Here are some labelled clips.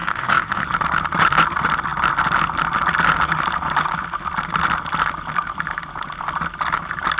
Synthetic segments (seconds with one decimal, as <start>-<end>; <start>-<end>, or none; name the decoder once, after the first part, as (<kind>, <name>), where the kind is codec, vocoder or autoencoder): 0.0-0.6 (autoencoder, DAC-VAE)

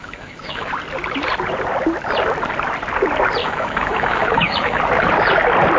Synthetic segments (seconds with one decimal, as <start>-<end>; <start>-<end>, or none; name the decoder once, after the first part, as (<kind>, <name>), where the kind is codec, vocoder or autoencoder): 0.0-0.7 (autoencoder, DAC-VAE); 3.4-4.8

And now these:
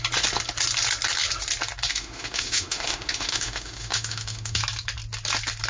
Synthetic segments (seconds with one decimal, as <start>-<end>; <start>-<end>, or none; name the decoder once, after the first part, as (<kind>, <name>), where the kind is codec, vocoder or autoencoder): 1.9-4.6 (autoencoder, DAC-VAE)

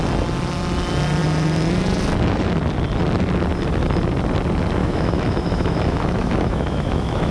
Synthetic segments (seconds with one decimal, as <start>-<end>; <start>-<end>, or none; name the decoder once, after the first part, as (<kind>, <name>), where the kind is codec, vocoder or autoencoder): 4.8-7.3 (autoencoder, DAC-VAE)